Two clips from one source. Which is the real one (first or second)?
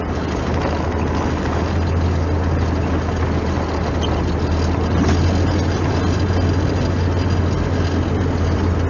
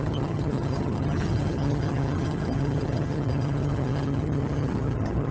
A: first